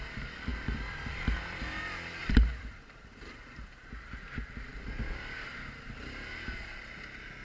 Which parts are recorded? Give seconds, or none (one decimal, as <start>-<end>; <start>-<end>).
0.0-0.5; 1.6-2.2; 4.2-7.4